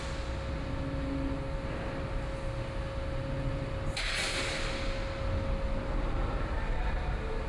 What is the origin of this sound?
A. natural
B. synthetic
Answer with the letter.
A